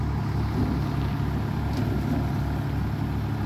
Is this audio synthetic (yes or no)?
no